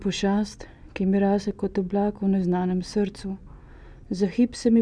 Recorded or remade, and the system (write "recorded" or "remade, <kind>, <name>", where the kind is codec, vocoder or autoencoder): recorded